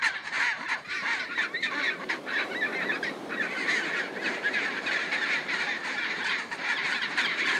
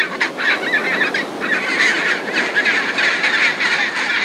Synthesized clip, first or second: first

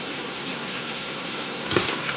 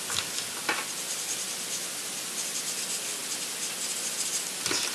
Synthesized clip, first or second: first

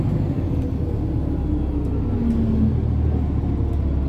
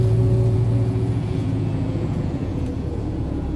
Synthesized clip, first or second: second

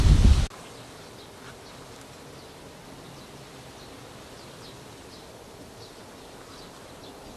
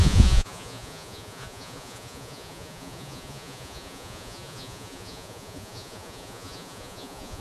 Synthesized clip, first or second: second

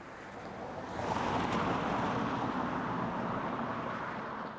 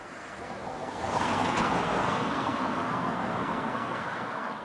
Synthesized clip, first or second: second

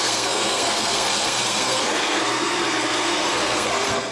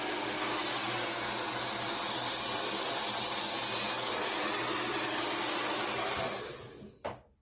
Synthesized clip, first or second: first